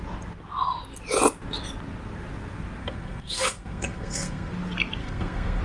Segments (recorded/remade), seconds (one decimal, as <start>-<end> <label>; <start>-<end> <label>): 0.0-2.8 recorded; 2.8-4.5 remade; 4.5-5.0 recorded; 5.0-5.6 remade